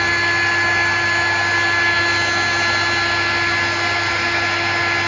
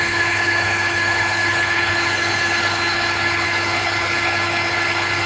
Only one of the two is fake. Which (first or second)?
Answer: second